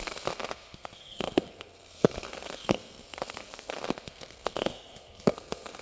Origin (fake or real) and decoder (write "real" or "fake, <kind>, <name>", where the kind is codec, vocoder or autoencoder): fake, codec, SNAC